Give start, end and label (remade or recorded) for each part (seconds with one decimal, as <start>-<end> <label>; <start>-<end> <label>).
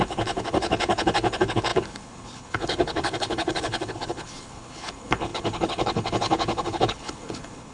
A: 0.0-7.7 remade